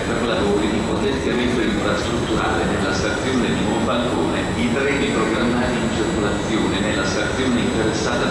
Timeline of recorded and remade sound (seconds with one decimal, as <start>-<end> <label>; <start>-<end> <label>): 0.0-0.9 recorded; 0.9-1.8 remade; 1.8-8.3 recorded